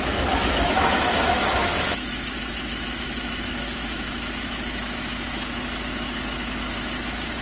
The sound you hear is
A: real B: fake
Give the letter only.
B